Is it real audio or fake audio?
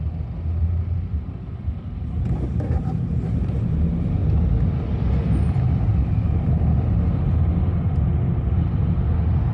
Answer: real